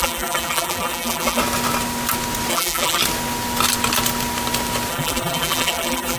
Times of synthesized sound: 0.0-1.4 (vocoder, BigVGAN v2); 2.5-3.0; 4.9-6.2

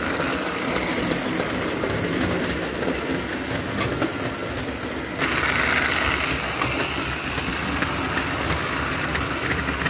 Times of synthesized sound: none

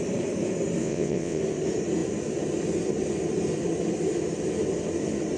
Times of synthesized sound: 0.8-1.4 (vocoder, WaveNeXt)

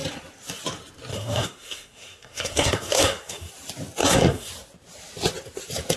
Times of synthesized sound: 1.1-3.5 (codec, SNAC); 4.0-4.5